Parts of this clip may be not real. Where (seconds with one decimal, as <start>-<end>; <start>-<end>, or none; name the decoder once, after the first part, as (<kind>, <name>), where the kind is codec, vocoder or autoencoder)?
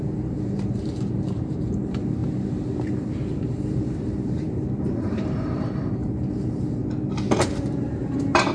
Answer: 0.0-6.8 (vocoder, BigVGAN v2); 7.5-8.5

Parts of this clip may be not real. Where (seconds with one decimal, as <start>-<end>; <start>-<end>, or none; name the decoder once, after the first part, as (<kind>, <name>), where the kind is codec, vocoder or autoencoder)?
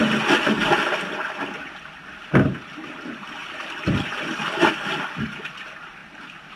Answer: 3.4-4.7 (vocoder, BigVGAN v2)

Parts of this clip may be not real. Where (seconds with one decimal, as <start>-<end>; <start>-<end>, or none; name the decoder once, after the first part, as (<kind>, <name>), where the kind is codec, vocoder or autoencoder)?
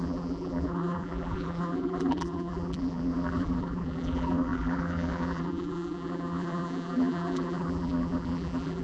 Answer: 0.0-8.8 (vocoder, BigVGAN v2)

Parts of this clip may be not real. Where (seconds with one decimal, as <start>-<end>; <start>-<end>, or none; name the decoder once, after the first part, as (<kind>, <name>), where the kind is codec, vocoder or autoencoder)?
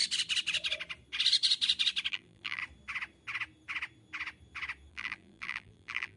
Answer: 2.1-2.6 (vocoder, BigVGAN v2); 4.9-6.2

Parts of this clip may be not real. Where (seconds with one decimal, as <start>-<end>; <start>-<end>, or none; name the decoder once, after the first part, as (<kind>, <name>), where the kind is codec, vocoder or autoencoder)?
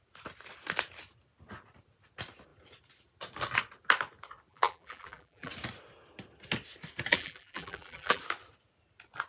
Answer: 4.5-5.5 (vocoder, BigVGAN v2); 7.1-8.2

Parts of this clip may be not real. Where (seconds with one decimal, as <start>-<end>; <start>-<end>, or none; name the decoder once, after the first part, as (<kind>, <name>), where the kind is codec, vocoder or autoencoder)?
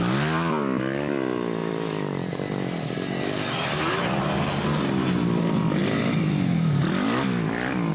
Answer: 1.6-3.9 (vocoder, BigVGAN v2); 5.8-7.9